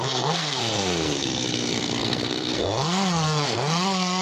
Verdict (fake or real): fake